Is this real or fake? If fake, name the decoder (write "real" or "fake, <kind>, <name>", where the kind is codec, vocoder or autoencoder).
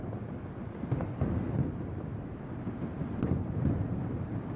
real